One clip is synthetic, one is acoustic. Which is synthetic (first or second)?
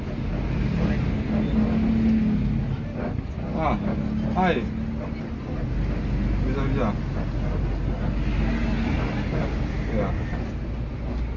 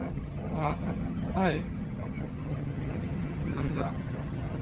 second